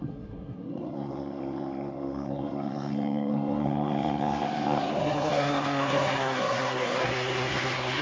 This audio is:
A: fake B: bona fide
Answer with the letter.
A